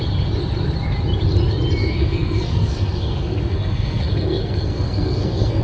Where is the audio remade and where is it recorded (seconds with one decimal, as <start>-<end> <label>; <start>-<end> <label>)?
0.0-1.8 recorded; 1.8-5.6 remade